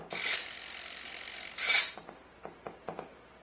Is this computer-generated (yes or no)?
no